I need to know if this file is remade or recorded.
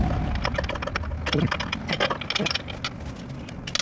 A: recorded